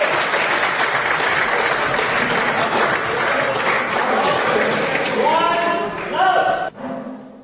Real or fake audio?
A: real